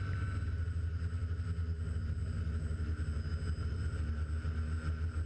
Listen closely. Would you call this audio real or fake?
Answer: real